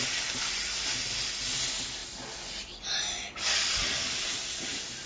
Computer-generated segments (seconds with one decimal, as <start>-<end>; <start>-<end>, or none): none